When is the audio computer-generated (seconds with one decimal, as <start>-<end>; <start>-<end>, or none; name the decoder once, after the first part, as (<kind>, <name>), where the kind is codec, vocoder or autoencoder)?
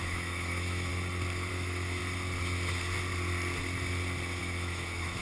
0.0-0.9 (autoencoder, DAC-VAE); 1.5-2.0; 4.4-5.2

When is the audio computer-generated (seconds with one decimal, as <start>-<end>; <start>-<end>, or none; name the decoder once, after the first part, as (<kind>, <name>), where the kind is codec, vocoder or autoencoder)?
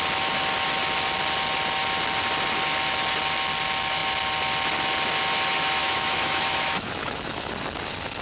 5.8-7.5 (autoencoder, DAC-VAE)